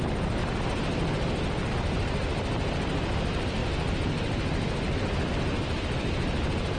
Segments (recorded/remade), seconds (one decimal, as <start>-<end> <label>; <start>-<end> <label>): 0.0-0.4 remade; 0.4-1.7 recorded; 1.7-6.8 remade